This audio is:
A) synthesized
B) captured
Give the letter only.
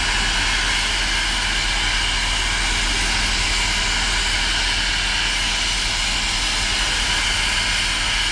B